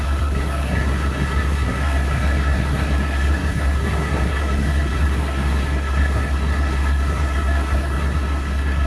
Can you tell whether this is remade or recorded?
remade